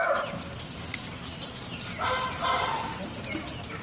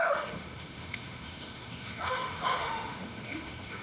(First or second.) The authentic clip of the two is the first